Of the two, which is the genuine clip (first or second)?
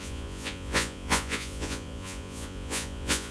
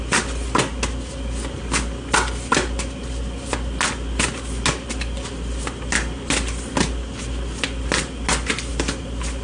second